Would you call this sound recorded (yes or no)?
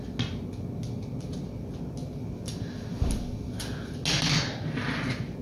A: yes